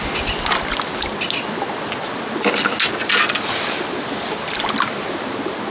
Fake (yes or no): no